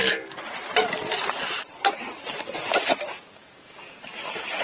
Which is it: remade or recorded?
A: remade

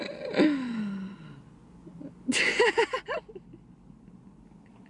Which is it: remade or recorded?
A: recorded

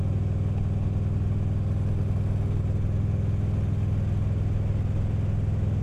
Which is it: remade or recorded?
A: recorded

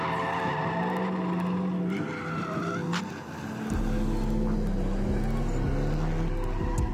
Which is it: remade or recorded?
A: recorded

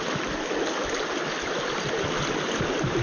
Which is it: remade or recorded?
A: recorded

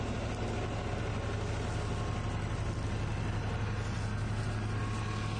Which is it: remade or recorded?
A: recorded